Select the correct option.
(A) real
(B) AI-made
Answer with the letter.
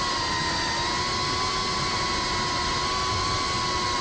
A